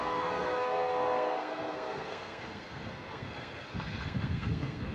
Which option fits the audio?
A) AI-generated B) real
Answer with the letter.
A